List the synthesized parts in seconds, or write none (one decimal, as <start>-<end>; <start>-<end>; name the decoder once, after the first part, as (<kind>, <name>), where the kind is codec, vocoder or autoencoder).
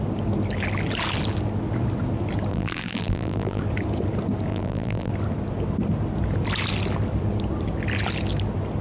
2.5-3.6 (vocoder, BigVGAN v2); 4.5-5.1